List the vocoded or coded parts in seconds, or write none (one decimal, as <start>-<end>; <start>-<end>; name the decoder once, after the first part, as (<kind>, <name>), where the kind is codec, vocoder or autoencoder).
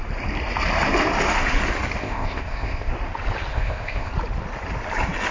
2.0-2.9 (codec, ZipCodec); 3.5-4.1